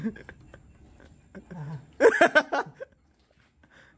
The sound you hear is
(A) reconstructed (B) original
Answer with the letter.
B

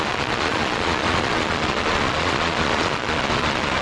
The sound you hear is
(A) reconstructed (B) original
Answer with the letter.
A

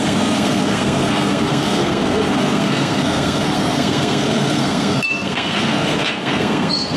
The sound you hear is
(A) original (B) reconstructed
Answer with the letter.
B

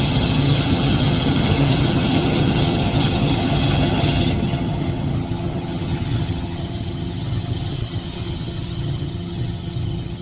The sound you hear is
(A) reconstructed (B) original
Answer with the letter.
A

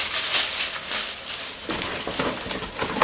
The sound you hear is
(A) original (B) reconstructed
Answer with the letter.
A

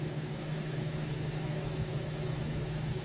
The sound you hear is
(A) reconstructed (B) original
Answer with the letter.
A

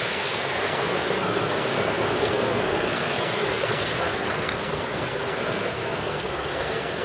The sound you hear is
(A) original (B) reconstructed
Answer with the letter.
B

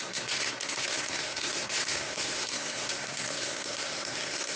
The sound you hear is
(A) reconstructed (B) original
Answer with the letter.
A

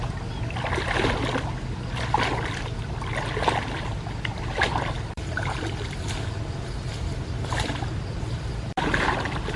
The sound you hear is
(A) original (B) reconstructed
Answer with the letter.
A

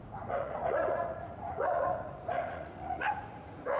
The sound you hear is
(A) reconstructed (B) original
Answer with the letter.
A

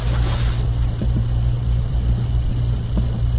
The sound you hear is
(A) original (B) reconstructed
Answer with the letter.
B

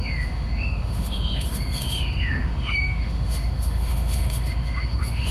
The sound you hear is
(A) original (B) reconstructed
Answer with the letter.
B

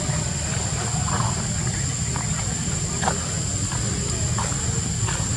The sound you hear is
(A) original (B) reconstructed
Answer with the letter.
A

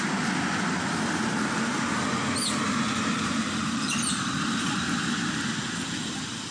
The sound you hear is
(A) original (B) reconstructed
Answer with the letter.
A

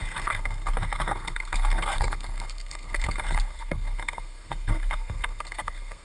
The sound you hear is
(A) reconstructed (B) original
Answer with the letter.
A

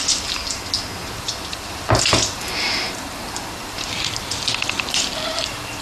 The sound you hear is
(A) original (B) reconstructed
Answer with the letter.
A